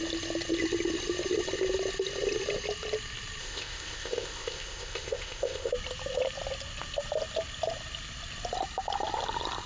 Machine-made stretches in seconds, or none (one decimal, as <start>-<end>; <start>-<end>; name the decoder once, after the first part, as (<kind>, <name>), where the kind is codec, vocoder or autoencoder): 3.4-5.7 (codec, ZipCodec)